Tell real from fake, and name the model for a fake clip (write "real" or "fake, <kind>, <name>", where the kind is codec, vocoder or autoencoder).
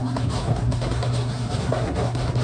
fake, codec, SNAC